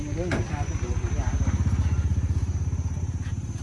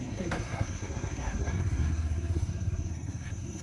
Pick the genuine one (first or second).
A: first